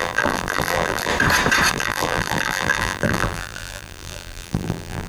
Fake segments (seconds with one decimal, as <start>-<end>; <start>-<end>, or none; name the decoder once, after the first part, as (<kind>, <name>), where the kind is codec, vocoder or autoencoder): 0.0-1.1 (vocoder, BigVGAN v2); 1.7-5.1